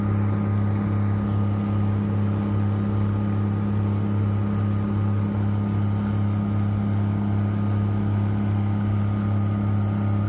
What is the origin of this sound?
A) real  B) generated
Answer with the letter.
A